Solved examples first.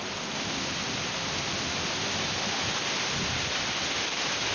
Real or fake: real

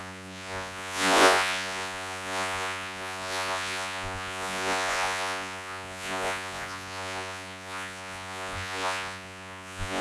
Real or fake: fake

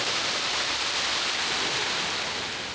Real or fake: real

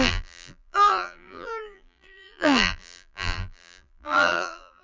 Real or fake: fake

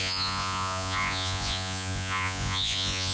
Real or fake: fake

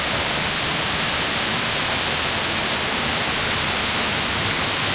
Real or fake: real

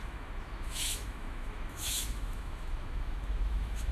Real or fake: fake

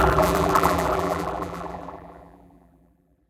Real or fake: fake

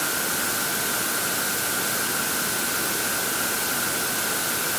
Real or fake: real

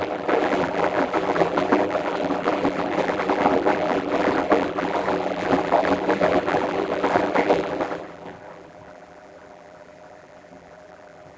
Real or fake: fake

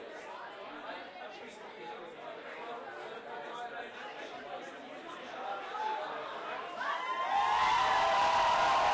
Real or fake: real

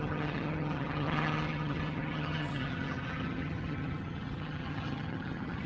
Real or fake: fake